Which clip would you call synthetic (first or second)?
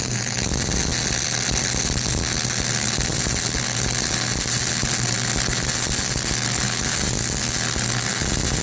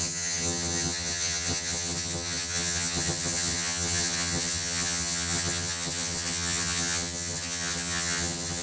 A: second